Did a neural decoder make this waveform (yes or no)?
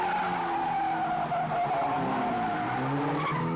no